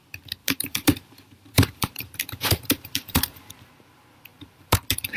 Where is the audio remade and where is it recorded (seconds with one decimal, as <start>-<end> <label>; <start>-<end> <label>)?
0.0-0.4 recorded; 0.4-3.5 remade; 3.5-4.3 recorded; 4.3-5.2 remade